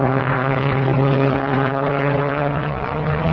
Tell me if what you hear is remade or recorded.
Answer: remade